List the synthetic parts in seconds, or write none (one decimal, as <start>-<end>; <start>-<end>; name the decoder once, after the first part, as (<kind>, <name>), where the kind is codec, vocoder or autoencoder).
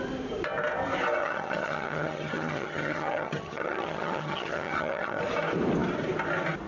1.2-5.2 (vocoder, HiFi-GAN)